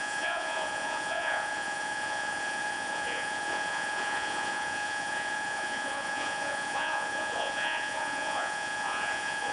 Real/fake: fake